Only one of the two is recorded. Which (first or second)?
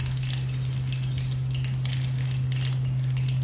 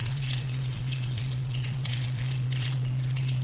first